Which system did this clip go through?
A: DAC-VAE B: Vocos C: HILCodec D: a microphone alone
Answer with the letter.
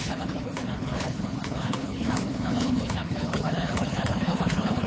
C